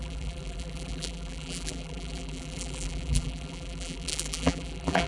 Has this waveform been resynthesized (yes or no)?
yes